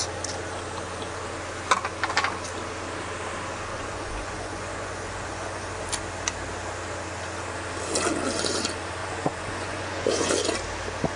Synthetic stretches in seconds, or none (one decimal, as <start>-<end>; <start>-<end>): 3.7-5.7; 9.0-10.3